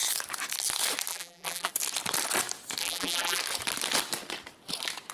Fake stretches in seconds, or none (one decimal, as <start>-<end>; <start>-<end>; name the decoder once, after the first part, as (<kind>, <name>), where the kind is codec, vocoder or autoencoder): 1.1-1.7 (vocoder, BigVGAN v2); 2.8-3.4